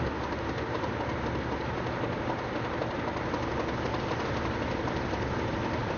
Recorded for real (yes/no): yes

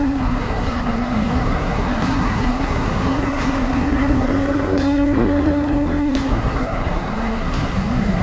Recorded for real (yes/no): no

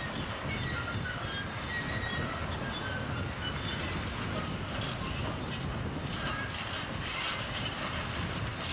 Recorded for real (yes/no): yes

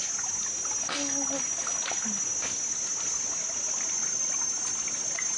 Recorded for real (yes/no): yes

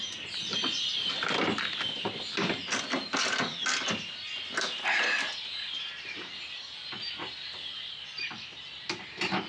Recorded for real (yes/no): yes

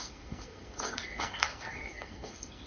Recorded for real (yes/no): no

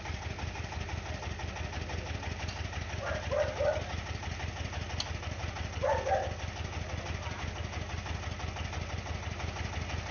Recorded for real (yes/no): yes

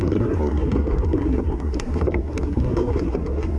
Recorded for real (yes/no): no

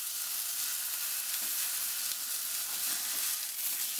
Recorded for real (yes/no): yes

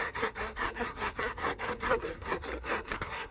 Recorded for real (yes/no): no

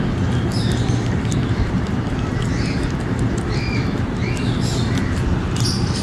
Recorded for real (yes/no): yes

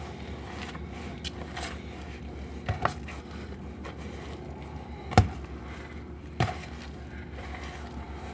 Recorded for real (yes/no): yes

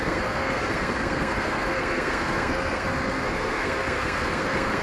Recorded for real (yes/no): no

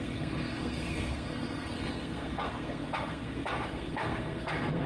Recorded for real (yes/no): no